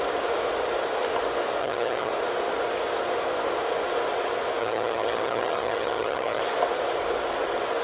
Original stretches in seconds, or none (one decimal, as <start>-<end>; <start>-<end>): 0.0-1.6; 2.1-4.6; 6.4-7.8